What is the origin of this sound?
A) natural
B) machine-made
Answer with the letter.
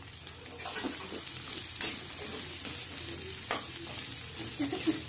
A